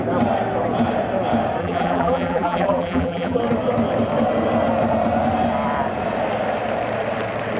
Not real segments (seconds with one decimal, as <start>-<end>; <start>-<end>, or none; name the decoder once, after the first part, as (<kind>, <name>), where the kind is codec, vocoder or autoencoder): 1.6-3.4 (vocoder, BigVGAN v2)